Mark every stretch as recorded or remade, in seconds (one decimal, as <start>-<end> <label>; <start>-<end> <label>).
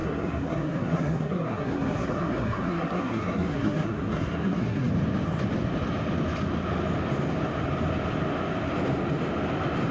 0.0-4.9 remade; 4.9-9.9 recorded